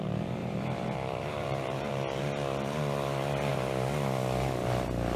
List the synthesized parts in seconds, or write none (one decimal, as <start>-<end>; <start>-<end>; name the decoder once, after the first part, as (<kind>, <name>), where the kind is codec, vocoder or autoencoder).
0.4-1.9 (vocoder, BigVGAN v2)